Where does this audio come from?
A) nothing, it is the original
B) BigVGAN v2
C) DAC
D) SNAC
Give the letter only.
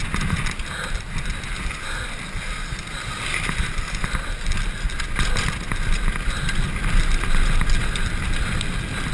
A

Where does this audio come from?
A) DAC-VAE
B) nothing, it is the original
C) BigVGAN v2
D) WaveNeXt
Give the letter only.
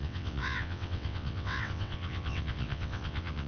D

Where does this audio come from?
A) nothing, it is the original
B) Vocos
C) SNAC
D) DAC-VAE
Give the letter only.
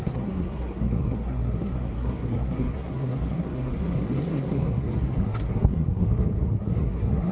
C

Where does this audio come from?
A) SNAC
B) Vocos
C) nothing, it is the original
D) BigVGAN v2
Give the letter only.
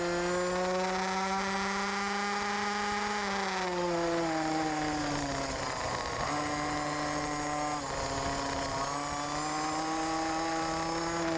C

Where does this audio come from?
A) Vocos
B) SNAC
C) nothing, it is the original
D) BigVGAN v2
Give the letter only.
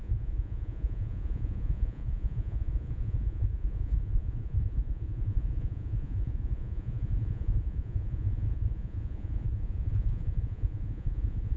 A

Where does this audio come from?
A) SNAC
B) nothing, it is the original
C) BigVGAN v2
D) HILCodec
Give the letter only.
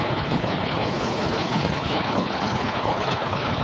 D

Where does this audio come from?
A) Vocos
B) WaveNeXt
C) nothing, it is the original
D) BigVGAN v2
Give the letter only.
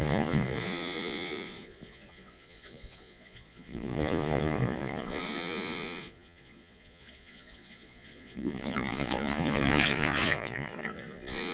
A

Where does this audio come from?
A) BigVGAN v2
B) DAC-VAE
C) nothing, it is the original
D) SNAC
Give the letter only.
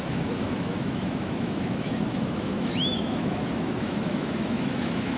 B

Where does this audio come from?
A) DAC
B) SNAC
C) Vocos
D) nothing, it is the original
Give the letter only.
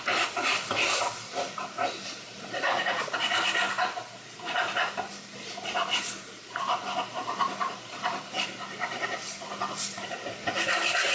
D